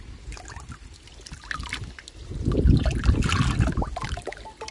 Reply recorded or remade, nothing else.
recorded